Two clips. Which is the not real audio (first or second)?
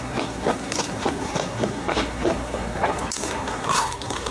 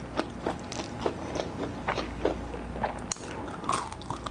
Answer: first